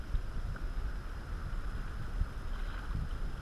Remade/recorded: recorded